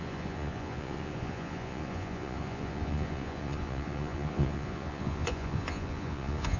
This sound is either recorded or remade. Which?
remade